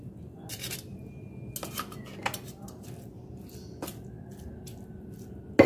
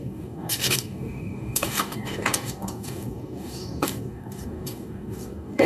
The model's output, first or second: second